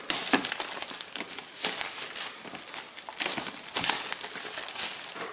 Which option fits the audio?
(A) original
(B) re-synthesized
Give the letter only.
B